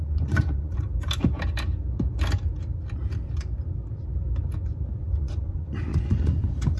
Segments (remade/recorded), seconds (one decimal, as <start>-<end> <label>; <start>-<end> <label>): 0.0-0.9 remade; 0.9-5.0 recorded; 5.0-6.8 remade